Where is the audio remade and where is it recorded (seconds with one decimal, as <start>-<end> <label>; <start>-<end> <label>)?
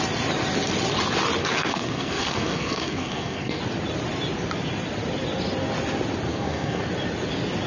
0.0-1.4 recorded; 1.4-3.6 remade; 3.6-6.3 recorded; 6.3-6.8 remade; 6.8-7.7 recorded